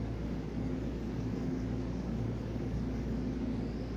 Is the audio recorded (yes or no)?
no